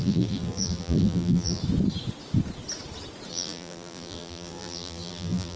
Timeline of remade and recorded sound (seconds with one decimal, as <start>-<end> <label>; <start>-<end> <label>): 0.0-1.6 remade; 1.6-3.3 recorded; 3.3-5.6 remade

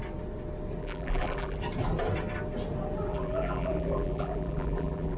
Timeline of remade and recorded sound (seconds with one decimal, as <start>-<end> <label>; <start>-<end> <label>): 0.0-0.8 recorded; 0.8-1.6 remade; 1.6-3.1 recorded; 3.1-5.2 remade

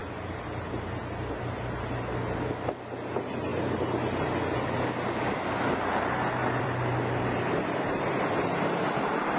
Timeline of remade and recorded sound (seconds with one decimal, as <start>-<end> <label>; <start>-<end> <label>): 0.0-9.4 remade

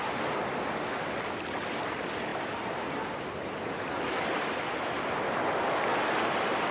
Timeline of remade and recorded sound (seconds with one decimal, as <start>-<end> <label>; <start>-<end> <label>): 0.0-6.7 recorded

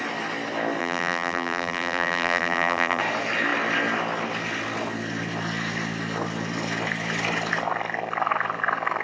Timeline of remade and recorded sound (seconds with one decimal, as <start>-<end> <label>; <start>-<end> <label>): 0.0-0.8 recorded; 0.8-3.0 remade; 3.0-9.0 recorded